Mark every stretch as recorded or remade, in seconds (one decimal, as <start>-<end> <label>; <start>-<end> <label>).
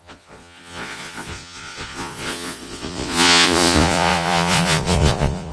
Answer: 0.0-5.5 remade